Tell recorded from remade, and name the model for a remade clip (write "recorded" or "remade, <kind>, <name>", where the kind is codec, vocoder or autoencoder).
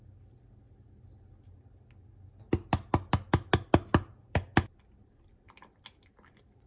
recorded